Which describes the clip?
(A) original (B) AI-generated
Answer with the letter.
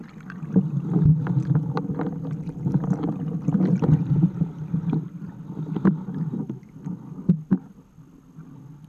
A